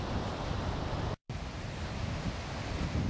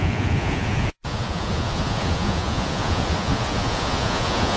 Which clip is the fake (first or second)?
second